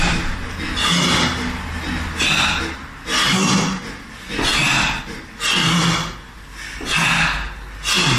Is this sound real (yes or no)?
yes